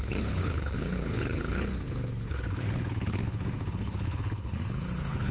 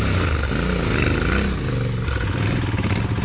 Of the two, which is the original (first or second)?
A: second